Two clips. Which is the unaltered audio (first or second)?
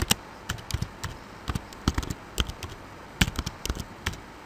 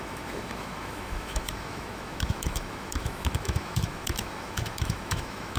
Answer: first